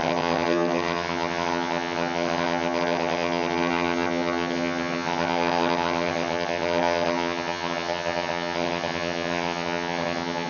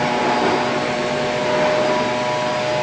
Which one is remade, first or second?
first